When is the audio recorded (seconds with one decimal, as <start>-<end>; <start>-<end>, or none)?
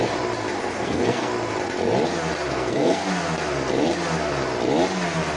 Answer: 0.0-0.6; 1.3-2.5; 3.0-5.4